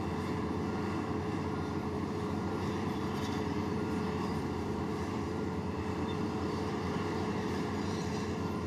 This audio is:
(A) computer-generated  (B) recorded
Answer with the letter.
A